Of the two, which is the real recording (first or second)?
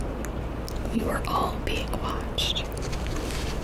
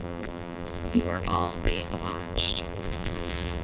first